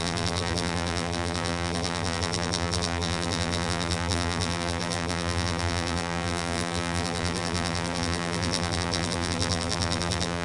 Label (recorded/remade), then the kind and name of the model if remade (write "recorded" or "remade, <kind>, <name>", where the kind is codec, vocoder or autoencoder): remade, vocoder, BigVGAN v2